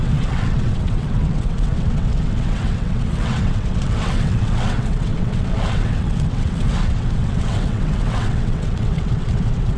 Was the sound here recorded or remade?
remade